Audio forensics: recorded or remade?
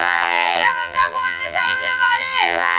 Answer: remade